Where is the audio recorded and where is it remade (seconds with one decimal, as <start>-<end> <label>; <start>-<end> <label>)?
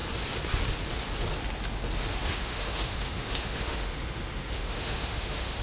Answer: 0.0-2.1 recorded; 2.1-5.6 remade